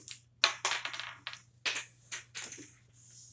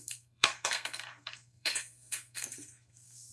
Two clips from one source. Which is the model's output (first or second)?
second